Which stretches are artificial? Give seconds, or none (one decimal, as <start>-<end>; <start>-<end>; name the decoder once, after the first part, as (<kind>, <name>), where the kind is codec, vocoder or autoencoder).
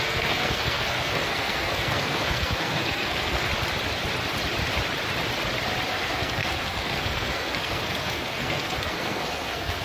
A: 0.0-3.5 (codec, SNAC); 5.9-9.8